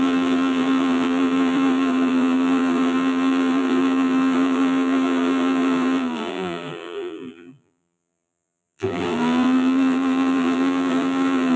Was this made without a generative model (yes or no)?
no